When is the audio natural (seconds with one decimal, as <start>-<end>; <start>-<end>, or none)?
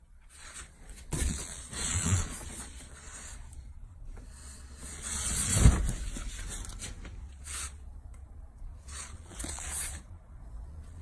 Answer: 5.5-7.3